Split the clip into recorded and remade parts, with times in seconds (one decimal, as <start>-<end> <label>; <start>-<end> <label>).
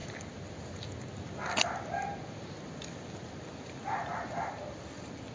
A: 0.0-5.3 recorded